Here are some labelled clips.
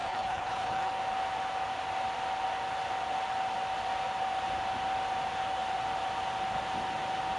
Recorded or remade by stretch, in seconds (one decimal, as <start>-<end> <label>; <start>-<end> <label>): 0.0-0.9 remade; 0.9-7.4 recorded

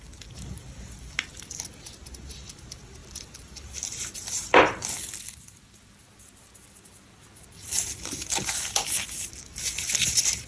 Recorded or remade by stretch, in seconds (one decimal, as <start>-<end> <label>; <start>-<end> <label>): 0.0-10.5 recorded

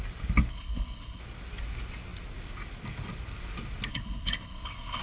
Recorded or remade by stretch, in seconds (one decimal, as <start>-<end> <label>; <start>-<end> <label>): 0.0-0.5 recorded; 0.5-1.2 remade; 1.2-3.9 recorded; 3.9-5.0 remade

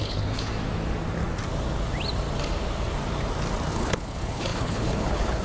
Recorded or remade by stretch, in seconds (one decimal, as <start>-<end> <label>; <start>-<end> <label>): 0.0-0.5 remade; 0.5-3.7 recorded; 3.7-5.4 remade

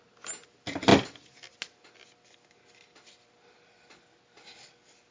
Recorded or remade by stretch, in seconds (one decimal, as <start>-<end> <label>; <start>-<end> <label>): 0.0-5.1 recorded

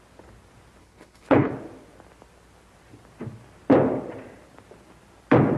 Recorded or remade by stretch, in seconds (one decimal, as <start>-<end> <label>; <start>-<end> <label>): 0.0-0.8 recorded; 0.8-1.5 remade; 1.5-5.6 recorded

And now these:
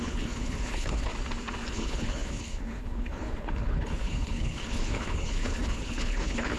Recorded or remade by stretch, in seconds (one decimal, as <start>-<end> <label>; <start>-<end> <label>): 0.0-1.1 remade; 1.1-1.7 recorded; 1.7-6.6 remade

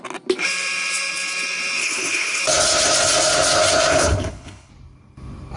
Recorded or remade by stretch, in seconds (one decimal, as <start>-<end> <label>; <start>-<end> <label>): 0.0-1.8 recorded; 1.8-2.4 remade; 2.4-3.9 recorded; 3.9-4.7 remade; 4.7-5.6 recorded